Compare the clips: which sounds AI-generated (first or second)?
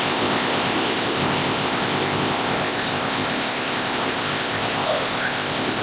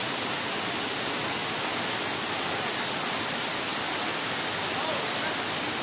first